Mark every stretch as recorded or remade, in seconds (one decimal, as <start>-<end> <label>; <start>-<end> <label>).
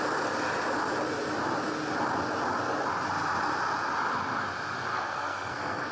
0.0-4.9 recorded; 4.9-5.9 remade